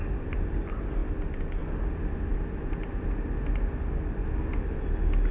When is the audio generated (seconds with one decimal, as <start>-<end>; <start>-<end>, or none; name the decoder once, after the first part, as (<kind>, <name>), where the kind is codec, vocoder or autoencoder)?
none